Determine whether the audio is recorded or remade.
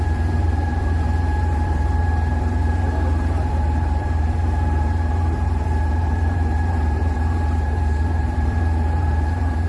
remade